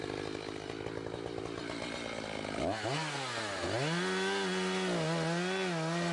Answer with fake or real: real